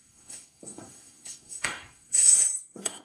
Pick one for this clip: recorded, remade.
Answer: remade